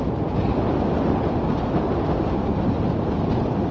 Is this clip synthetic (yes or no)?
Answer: no